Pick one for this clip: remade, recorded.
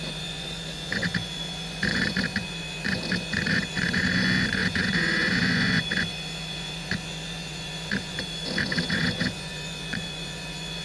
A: remade